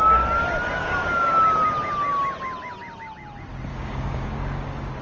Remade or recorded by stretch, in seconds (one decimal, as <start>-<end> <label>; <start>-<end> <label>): 0.0-0.8 recorded; 0.8-1.3 remade; 1.3-3.7 recorded; 3.7-5.0 remade